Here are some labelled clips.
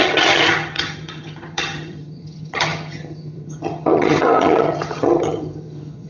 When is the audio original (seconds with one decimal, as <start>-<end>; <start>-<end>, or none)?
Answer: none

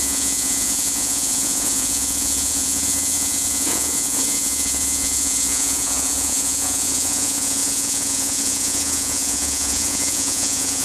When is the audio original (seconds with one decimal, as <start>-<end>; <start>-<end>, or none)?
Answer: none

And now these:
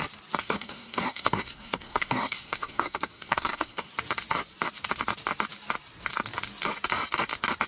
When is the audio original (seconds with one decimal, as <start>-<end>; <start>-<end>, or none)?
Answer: 0.0-0.4; 3.9-7.7

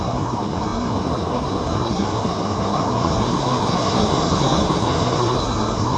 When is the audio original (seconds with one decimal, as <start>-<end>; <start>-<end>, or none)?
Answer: none